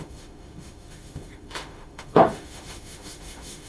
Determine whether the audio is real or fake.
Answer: fake